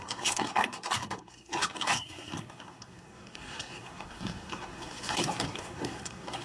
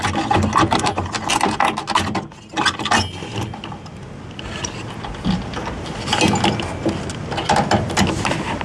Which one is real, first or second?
second